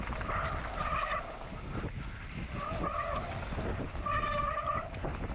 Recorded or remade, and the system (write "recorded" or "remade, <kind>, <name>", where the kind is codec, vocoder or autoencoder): recorded